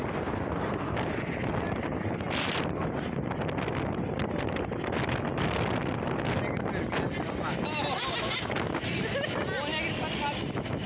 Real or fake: real